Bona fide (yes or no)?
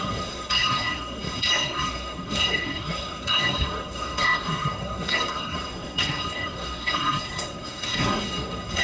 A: no